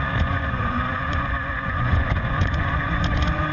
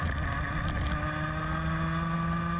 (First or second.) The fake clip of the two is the first